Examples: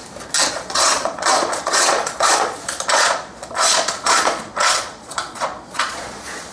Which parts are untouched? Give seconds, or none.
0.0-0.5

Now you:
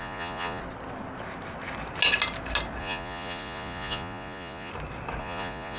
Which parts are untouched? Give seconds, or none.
0.6-2.8; 4.7-5.2

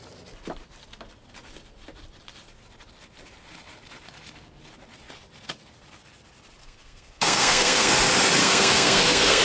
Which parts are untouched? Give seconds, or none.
0.0-6.6; 7.9-8.4

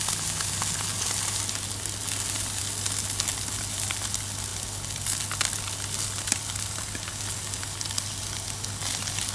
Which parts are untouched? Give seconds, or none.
0.0-9.3

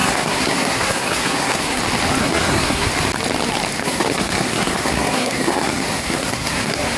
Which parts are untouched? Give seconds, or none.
1.8-2.2; 2.9-3.8